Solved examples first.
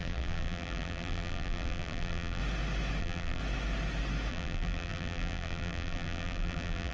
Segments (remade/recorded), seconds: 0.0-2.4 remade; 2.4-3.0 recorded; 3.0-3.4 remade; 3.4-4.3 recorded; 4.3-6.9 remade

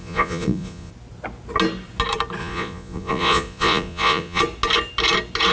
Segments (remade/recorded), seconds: 0.0-0.9 remade; 0.9-2.4 recorded; 2.4-4.4 remade; 4.4-5.5 recorded